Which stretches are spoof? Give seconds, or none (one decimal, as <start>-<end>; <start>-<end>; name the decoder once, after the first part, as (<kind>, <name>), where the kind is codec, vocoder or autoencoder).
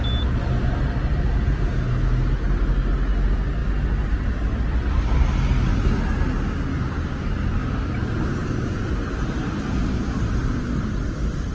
7.6-10.3 (vocoder, BigVGAN v2)